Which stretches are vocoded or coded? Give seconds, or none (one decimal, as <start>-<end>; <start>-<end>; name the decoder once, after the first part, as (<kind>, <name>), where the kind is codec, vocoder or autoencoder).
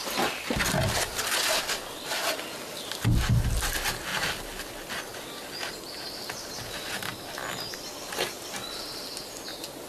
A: none